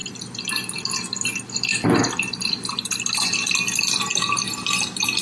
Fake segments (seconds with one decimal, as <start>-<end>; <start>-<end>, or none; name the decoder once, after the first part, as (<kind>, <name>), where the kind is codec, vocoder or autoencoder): 1.7-2.7 (vocoder, BigVGAN v2); 4.1-5.2